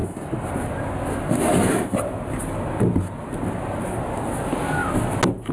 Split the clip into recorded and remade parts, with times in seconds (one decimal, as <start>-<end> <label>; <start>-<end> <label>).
0.0-5.5 recorded